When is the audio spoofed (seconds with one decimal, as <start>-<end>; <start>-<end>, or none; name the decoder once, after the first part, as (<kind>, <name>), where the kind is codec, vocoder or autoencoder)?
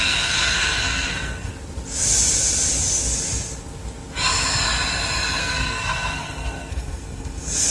0.0-1.5 (codec, SNAC); 5.4-7.7